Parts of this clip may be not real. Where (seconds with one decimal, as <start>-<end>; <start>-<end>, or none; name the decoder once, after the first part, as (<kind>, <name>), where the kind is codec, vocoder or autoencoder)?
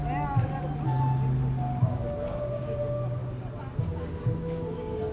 1.8-3.2 (codec, DAC); 3.8-5.1